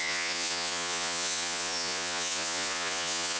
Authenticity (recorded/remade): remade